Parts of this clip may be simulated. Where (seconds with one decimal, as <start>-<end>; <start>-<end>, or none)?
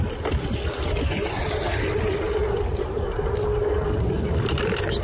none